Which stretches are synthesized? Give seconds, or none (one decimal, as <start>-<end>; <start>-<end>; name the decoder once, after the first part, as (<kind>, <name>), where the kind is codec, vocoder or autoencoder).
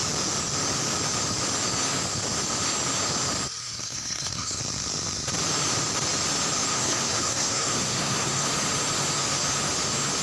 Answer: 3.6-4.6 (codec, SNAC); 6.7-8.5